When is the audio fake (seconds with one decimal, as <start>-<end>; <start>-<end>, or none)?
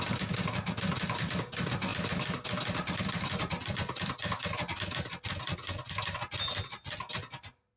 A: none